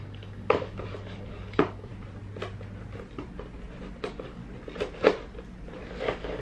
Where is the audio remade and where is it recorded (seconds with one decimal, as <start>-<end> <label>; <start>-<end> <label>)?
0.0-1.9 remade; 1.9-4.0 recorded; 4.0-4.4 remade; 4.4-5.9 recorded; 5.9-6.4 remade